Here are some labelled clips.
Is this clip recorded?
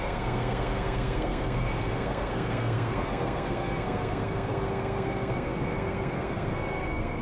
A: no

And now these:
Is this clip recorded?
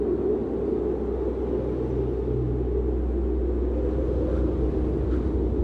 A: yes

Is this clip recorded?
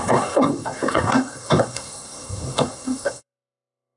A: no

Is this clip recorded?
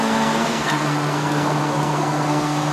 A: no